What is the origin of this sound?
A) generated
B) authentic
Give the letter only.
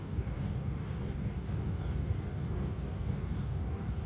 A